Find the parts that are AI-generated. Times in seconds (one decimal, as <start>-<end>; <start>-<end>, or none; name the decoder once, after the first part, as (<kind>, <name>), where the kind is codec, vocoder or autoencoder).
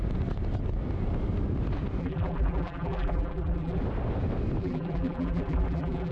2.0-3.8 (vocoder, BigVGAN v2); 4.6-6.1